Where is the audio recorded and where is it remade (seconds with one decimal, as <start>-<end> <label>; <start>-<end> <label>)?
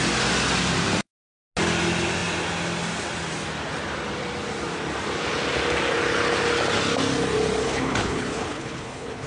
0.0-7.6 recorded; 7.6-9.3 remade